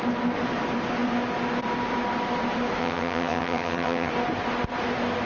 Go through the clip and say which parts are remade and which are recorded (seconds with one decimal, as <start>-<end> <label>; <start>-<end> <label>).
0.0-2.8 recorded; 2.8-4.1 remade; 4.1-5.3 recorded